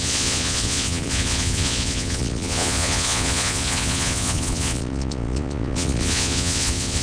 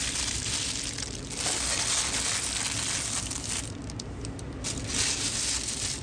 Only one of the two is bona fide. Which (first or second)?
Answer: second